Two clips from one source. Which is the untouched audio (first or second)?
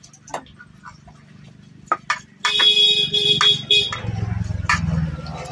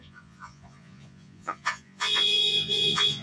first